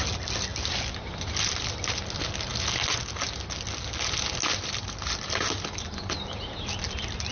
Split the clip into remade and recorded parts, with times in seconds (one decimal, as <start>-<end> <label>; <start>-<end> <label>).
0.0-7.3 recorded